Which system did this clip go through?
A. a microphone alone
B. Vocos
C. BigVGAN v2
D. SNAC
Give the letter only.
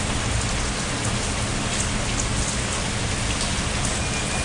A